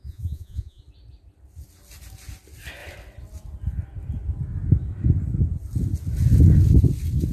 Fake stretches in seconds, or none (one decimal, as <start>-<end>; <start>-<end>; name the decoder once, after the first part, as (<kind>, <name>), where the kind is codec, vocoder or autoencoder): 0.0-0.8 (vocoder, Vocos)